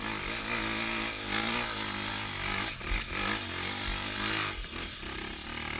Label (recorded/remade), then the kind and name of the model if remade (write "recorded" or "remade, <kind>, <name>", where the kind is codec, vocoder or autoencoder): recorded